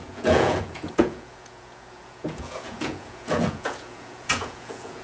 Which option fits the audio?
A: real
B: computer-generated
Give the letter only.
B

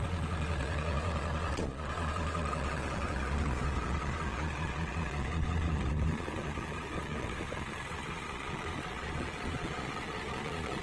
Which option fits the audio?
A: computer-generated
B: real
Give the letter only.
A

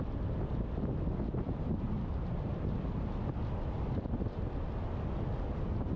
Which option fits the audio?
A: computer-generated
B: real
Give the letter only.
B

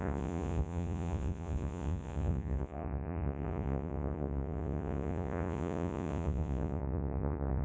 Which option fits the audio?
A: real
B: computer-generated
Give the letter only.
B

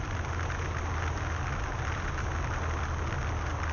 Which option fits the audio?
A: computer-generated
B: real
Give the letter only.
B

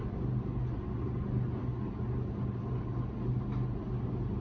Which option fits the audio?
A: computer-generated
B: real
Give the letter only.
B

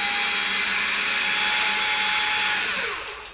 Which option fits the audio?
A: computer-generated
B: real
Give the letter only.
B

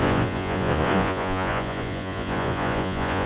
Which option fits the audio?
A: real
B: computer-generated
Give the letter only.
B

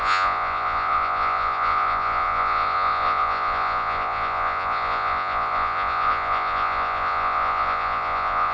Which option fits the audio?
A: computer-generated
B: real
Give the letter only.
A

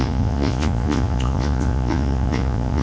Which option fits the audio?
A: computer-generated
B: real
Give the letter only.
A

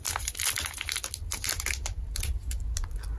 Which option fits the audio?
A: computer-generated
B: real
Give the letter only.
B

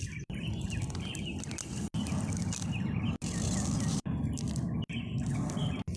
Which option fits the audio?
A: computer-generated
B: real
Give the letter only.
B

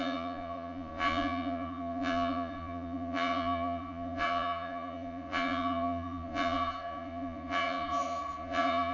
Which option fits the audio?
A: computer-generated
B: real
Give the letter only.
A